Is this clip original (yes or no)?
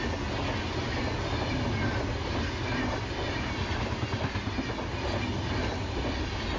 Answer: yes